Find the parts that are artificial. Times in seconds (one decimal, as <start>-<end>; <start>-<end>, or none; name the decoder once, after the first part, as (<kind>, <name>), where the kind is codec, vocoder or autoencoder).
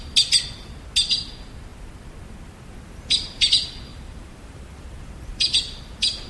3.9-5.8 (vocoder, BigVGAN v2)